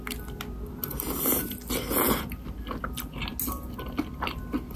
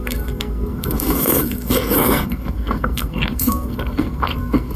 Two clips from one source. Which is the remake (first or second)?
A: second